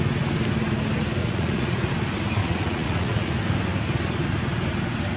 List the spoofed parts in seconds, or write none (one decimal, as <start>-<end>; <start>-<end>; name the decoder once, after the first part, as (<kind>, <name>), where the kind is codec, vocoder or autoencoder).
1.2-1.9 (vocoder, Vocos); 2.4-3.3